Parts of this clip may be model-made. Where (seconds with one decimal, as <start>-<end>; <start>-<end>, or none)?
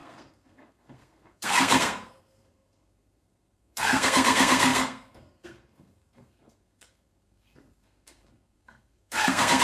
0.0-9.6